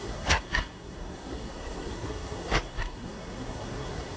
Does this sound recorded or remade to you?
remade